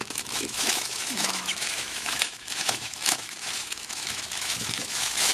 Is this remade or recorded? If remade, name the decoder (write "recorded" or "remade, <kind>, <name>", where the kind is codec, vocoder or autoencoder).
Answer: remade, autoencoder, DAC-VAE